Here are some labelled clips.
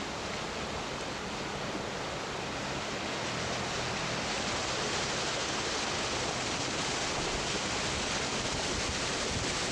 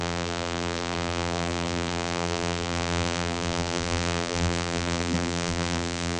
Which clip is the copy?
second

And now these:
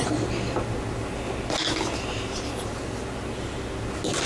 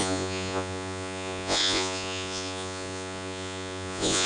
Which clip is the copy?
second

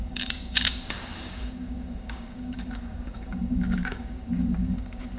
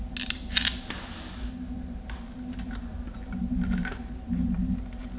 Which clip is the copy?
first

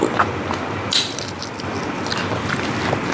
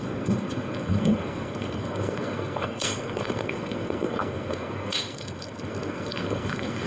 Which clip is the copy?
second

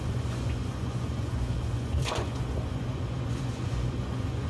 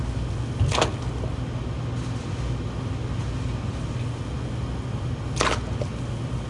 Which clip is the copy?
first